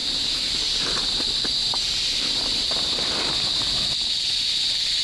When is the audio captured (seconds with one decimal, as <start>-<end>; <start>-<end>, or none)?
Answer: 3.0-5.0